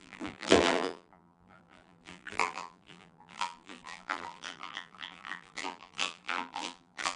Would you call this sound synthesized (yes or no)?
yes